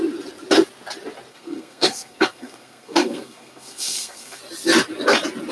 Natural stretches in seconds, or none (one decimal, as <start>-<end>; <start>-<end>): 0.0-1.3; 4.4-5.5